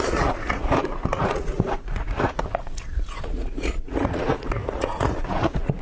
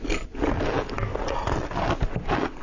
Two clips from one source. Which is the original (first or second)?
second